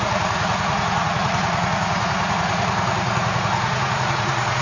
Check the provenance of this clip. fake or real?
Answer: fake